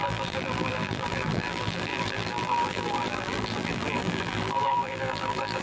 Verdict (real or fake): fake